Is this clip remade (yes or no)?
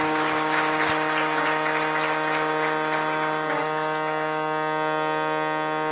no